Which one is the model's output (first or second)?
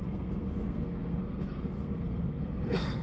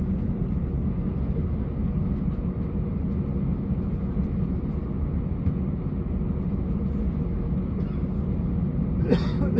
first